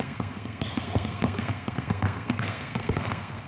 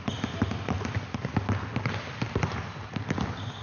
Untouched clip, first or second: second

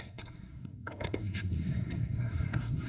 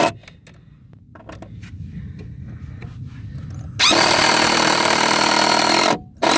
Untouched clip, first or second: second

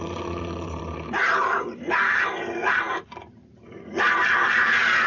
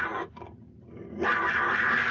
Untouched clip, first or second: second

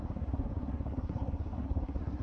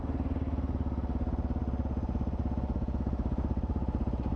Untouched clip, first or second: second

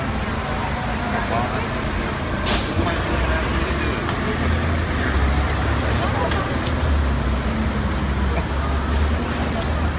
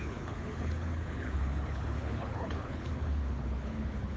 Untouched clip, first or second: first